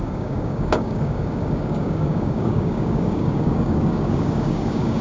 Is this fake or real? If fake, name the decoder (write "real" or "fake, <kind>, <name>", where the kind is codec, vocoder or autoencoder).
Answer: fake, codec, DAC